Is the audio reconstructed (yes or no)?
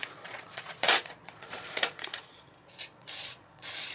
yes